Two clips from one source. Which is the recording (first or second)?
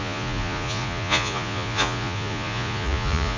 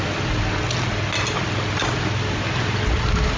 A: second